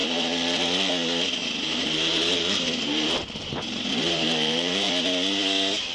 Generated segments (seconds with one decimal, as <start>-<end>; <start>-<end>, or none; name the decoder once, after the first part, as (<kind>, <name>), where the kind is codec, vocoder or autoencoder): 0.0-0.9 (vocoder, BigVGAN v2); 1.4-4.9